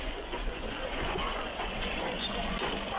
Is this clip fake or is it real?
fake